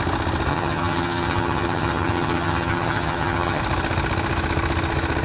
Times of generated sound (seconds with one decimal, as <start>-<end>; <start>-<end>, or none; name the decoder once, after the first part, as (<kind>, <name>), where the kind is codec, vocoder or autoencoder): 0.5-3.6 (vocoder, HiFi-GAN)